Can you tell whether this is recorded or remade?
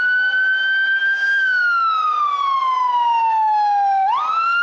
recorded